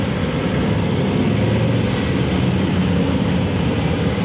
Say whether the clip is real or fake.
real